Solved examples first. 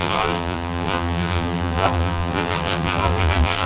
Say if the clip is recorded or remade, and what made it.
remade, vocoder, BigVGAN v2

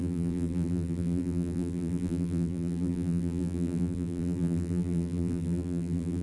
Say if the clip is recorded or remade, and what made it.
remade, vocoder, BigVGAN v2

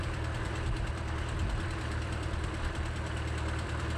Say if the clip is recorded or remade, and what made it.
remade, vocoder, BigVGAN v2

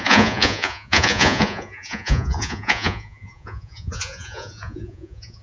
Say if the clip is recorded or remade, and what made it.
remade, vocoder, Vocos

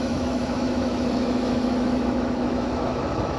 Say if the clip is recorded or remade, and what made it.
remade, autoencoder, DAC-VAE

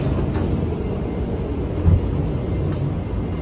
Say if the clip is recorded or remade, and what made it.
recorded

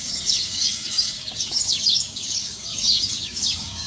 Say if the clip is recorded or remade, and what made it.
remade, codec, DAC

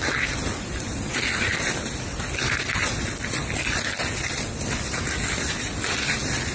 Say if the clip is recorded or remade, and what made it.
recorded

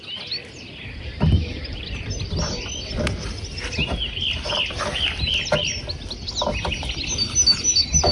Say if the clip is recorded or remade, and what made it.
recorded